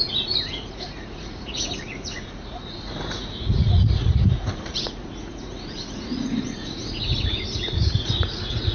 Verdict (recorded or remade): remade